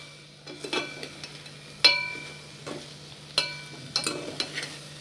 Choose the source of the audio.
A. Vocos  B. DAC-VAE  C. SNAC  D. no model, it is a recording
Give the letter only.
D